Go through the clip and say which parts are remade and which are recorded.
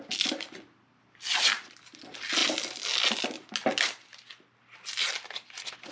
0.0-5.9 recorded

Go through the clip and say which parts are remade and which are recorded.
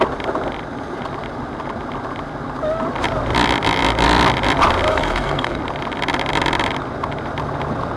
0.0-4.9 recorded; 4.9-5.6 remade; 5.6-8.0 recorded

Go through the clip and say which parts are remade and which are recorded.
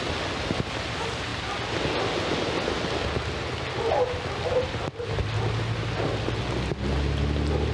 0.0-7.7 recorded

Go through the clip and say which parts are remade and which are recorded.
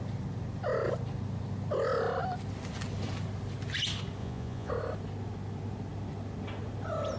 0.0-4.2 recorded; 4.2-4.7 remade; 4.7-7.2 recorded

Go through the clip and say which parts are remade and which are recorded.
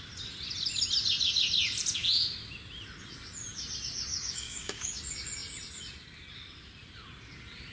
0.0-4.1 recorded; 4.1-5.0 remade; 5.0-7.7 recorded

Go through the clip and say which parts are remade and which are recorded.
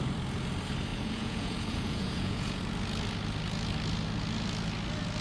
0.0-0.9 recorded; 0.9-2.6 remade; 2.6-5.2 recorded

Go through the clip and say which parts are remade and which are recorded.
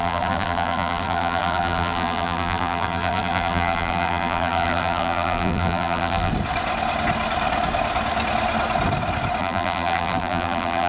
0.0-6.3 remade; 6.3-9.4 recorded; 9.4-10.9 remade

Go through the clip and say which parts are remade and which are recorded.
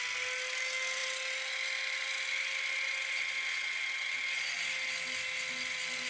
0.0-6.1 recorded